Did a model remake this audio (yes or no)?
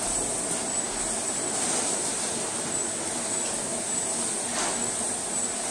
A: no